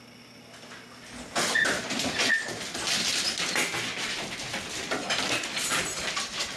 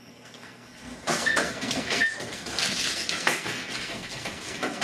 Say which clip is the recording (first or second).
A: first